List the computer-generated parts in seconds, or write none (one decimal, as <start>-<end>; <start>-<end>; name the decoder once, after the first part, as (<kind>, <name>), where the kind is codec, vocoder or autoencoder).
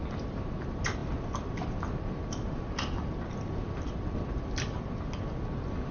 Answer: none